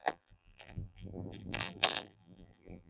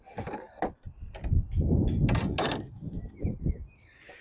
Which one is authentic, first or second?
second